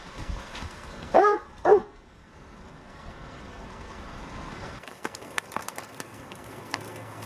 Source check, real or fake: fake